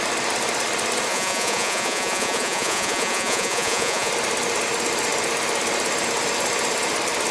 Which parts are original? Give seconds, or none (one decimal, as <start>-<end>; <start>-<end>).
0.0-1.1; 4.1-7.3